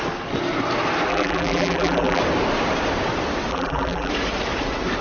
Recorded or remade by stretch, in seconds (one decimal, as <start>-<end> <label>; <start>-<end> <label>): 0.0-1.1 recorded; 1.1-2.2 remade; 2.2-3.5 recorded; 3.5-4.1 remade; 4.1-5.0 recorded